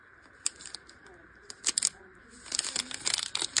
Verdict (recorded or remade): recorded